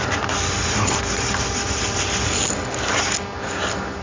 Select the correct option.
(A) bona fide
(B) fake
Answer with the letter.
A